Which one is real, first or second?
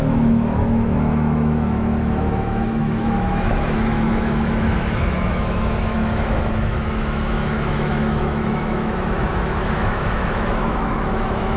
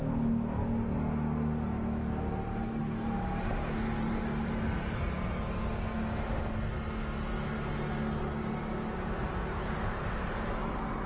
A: second